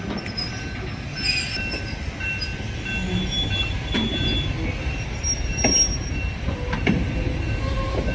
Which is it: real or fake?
real